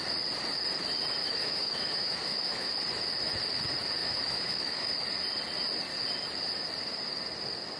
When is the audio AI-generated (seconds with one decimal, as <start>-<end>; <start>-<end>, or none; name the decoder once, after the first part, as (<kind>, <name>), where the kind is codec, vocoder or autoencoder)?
1.2-2.7 (autoencoder, DAC-VAE); 4.0-4.9